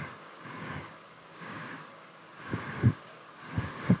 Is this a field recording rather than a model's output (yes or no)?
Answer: no